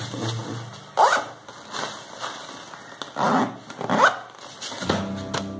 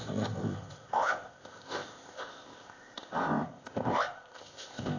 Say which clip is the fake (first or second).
second